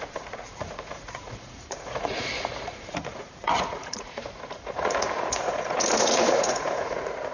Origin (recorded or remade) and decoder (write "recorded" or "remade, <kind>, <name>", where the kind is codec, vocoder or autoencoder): remade, vocoder, Vocos